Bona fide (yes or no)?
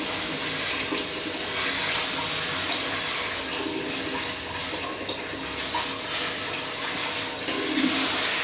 yes